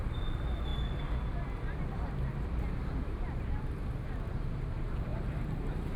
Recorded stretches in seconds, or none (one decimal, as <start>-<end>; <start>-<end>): 0.0-5.1